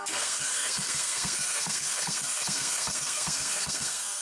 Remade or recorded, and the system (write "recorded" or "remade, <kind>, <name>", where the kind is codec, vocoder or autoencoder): remade, codec, SNAC